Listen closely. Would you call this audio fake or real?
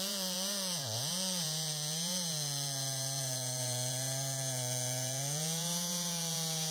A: fake